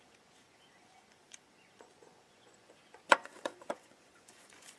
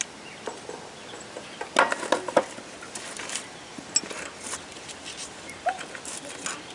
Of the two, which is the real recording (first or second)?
second